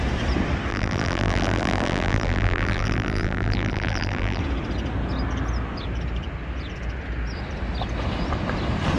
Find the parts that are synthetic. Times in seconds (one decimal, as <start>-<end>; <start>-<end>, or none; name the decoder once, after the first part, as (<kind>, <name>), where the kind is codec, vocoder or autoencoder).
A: 0.7-4.4 (vocoder, BigVGAN v2)